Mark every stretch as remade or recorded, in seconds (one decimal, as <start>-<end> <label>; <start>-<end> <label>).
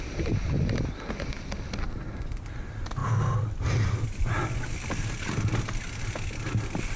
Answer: 0.0-7.0 recorded